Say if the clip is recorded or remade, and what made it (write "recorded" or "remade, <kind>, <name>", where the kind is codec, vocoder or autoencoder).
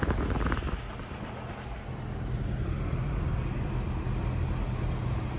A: recorded